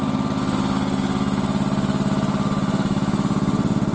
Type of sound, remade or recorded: recorded